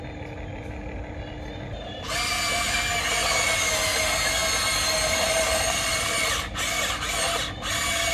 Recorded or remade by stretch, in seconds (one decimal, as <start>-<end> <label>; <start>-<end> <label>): 0.0-8.1 recorded